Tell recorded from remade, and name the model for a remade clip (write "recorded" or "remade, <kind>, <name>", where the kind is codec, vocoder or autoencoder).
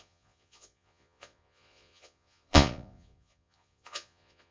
remade, vocoder, Vocos